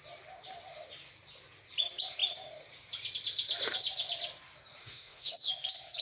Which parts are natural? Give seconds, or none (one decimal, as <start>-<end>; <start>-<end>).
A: 0.0-4.8; 5.5-6.0